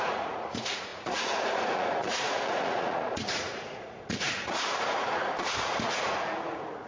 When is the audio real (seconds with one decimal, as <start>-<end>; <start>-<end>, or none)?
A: none